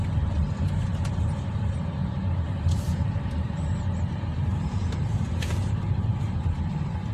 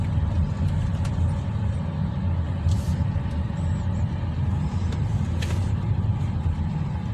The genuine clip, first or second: second